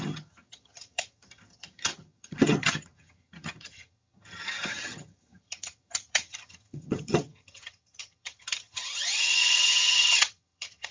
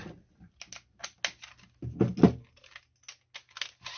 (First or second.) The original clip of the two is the second